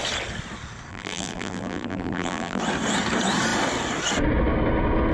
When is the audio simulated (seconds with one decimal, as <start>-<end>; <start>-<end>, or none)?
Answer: 0.9-2.6